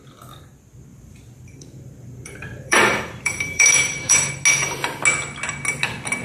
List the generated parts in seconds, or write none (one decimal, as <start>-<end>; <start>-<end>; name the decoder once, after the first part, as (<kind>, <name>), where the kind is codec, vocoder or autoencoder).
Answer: 0.9-4.3 (vocoder, BigVGAN v2)